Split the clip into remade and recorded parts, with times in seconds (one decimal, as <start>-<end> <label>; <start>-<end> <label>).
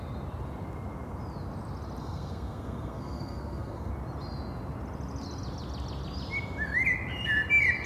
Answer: 0.0-2.0 recorded; 2.0-3.9 remade; 3.9-7.9 recorded